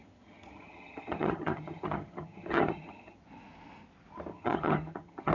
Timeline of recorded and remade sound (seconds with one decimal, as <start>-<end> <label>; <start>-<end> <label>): 0.0-3.2 remade; 3.2-4.3 recorded; 4.3-5.3 remade